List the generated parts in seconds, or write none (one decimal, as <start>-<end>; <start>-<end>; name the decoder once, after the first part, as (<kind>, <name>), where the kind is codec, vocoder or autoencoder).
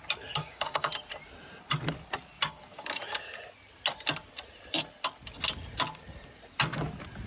0.4-0.9 (codec, DAC)